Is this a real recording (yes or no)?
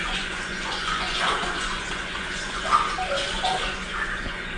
no